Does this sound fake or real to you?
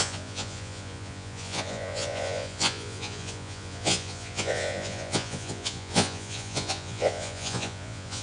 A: fake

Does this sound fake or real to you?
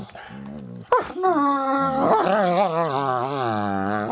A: real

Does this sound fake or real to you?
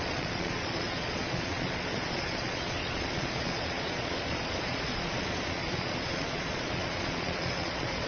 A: fake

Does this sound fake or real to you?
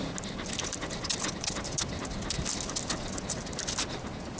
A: real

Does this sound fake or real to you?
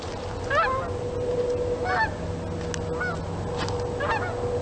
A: real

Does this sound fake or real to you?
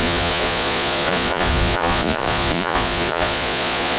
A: fake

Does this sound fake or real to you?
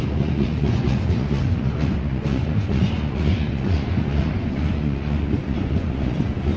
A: fake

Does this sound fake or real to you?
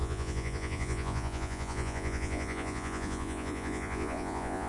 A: fake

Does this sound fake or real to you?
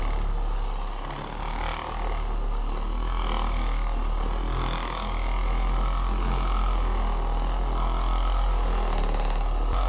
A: real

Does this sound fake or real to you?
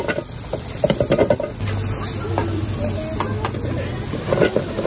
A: real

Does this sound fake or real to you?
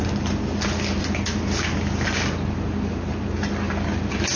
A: real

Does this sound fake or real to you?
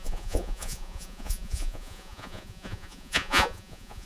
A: fake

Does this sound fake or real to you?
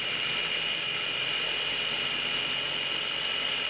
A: real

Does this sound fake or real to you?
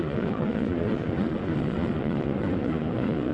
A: fake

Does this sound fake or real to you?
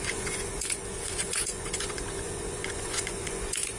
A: fake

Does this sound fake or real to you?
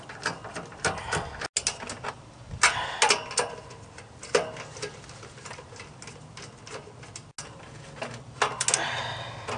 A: real